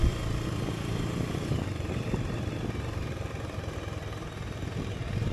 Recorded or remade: remade